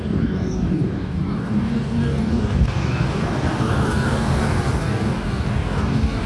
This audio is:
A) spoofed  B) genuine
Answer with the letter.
A